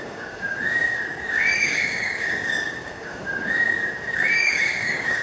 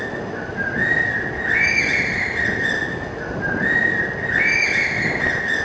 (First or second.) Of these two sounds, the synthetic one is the first